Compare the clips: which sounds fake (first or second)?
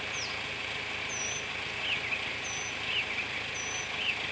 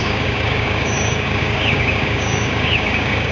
second